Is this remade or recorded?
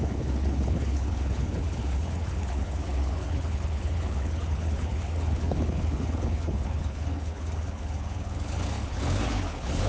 remade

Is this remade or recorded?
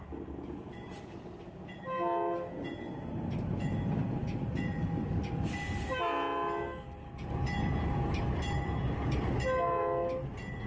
recorded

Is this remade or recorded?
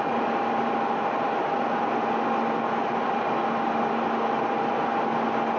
recorded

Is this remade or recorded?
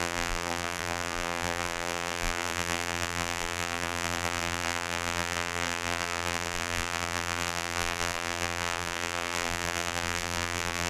remade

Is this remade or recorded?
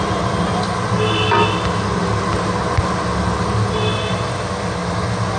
recorded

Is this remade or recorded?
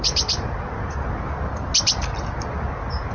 recorded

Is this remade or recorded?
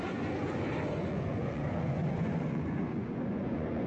remade